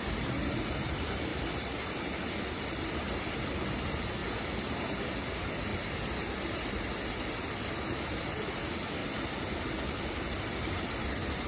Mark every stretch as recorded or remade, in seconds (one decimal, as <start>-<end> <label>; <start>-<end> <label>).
0.0-11.5 recorded